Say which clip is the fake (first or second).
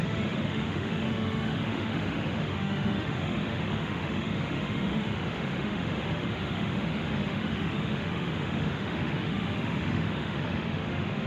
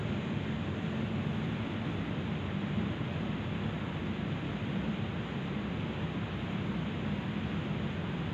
first